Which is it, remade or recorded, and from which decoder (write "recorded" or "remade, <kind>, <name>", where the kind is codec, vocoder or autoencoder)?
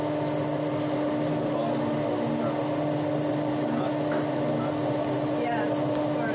recorded